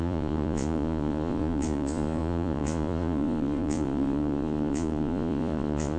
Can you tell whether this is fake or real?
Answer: fake